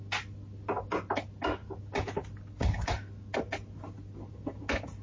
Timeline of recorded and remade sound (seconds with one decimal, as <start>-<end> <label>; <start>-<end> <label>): 0.0-5.0 recorded